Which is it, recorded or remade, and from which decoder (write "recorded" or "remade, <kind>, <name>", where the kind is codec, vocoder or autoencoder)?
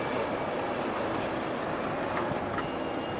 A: recorded